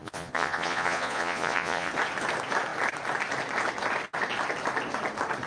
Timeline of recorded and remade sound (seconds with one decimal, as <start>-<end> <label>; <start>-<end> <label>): 0.0-1.9 remade; 1.9-5.5 recorded